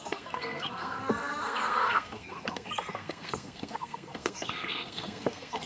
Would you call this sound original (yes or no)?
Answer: no